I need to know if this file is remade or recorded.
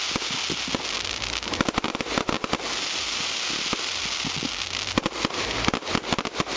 recorded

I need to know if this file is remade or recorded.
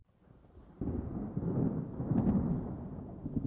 recorded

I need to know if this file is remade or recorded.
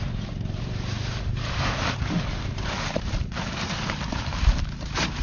remade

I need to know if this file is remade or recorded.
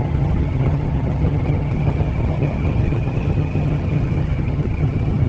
remade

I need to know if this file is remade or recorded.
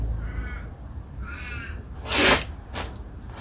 recorded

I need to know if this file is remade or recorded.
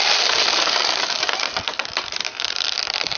remade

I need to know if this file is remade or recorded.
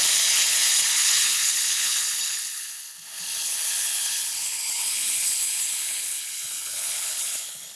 remade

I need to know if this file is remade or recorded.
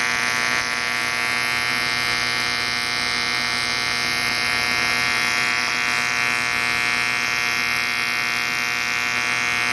recorded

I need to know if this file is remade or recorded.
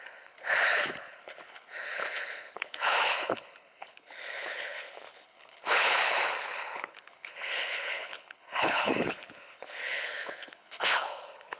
remade